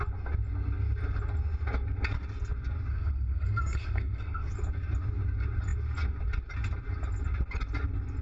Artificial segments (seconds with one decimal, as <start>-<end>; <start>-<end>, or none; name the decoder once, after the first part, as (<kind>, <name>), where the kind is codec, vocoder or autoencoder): 2.9-4.5 (codec, SNAC)